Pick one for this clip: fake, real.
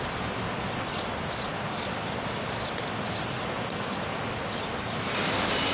real